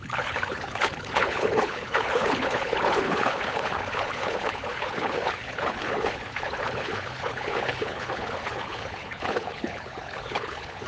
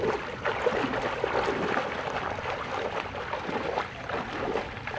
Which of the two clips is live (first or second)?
second